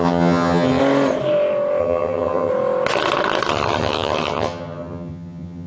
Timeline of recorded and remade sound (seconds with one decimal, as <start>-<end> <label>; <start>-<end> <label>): 0.0-0.8 remade; 0.8-1.8 recorded; 1.8-2.5 remade; 2.5-3.5 recorded; 3.5-5.7 remade

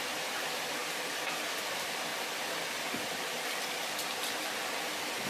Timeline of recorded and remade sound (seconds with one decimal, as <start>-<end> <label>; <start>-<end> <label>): 0.0-2.1 recorded; 2.1-4.3 remade; 4.3-5.3 recorded

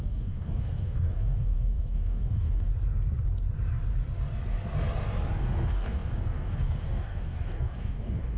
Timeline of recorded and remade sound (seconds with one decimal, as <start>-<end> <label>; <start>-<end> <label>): 0.0-2.7 remade; 2.7-5.4 recorded; 5.4-8.4 remade